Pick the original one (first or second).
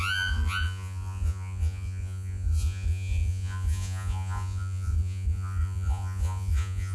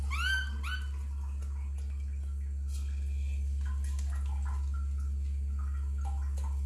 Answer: second